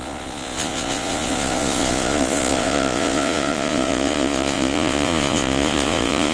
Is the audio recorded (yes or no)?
no